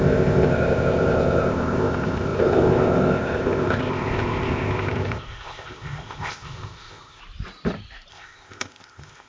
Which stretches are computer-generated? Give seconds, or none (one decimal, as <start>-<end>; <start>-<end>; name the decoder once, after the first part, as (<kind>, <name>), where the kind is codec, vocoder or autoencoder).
0.0-7.2 (codec, ZipCodec); 8.1-9.3